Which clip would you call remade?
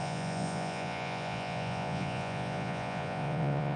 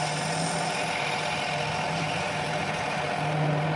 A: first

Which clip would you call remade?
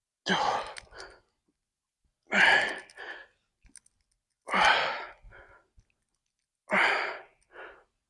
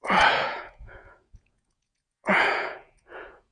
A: second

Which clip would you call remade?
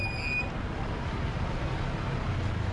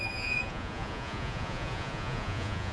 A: second